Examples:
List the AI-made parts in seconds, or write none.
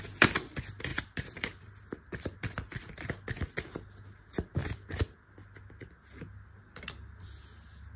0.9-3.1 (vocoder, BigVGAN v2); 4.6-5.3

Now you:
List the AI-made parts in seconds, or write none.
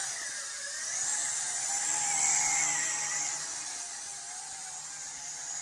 none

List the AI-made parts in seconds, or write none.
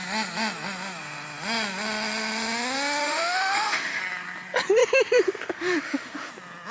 3.0-4.0 (autoencoder, DAC-VAE); 4.8-6.3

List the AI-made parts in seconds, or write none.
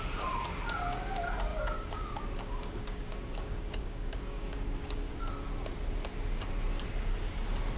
1.5-5.2 (codec, DAC)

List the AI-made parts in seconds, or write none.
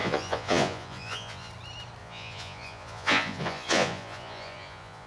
0.0-1.5 (vocoder, Vocos); 2.0-5.1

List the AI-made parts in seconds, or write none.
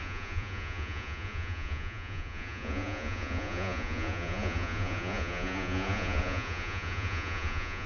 0.0-7.9 (vocoder, Vocos)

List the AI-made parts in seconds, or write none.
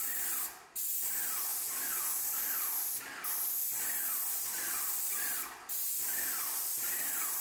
none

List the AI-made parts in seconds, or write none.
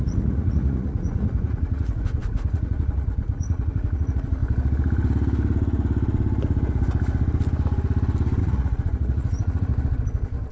0.0-4.4 (vocoder, Vocos); 8.4-9.7